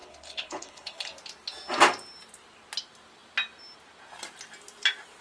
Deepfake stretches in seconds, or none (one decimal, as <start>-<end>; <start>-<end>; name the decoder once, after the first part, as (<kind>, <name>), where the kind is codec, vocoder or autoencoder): 0.0-1.1 (codec, HILCodec)